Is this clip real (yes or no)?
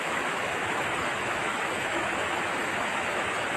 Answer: no